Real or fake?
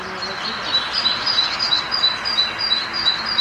real